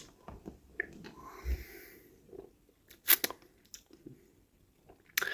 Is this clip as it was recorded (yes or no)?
yes